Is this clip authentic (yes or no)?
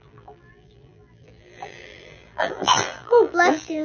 no